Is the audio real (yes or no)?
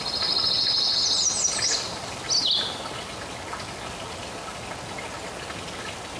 yes